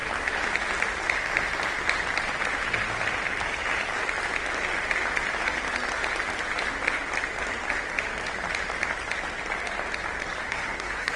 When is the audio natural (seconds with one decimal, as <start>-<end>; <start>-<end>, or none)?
0.0-10.4